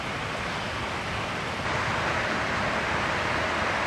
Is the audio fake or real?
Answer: real